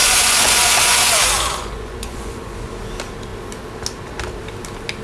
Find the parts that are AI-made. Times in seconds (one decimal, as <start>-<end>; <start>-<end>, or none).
0.0-2.7